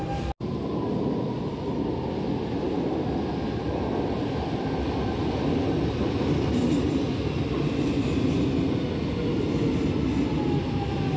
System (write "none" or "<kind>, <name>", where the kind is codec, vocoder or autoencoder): none